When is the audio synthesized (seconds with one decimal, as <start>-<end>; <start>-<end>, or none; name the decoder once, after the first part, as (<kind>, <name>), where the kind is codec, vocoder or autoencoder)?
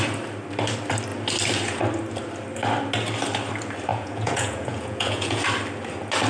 3.9-5.4 (vocoder, Vocos)